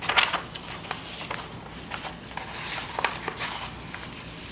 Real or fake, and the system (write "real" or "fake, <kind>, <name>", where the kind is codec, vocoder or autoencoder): real